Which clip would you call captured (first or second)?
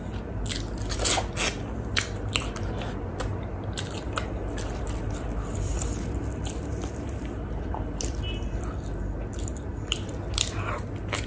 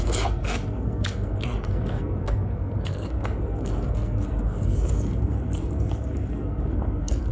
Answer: first